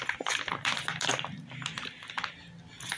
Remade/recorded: recorded